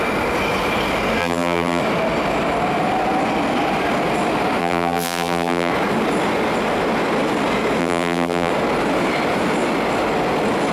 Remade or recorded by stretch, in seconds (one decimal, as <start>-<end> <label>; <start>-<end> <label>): 0.0-1.2 recorded; 1.2-1.8 remade; 1.8-4.6 recorded; 4.6-5.7 remade; 5.7-7.8 recorded; 7.8-8.5 remade; 8.5-10.7 recorded